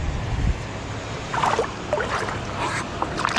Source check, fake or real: real